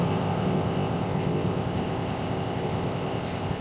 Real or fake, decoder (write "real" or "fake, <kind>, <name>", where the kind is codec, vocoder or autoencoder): fake, codec, ZipCodec